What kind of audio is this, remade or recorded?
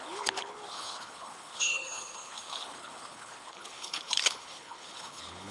remade